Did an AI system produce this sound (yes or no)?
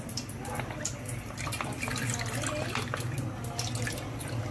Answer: no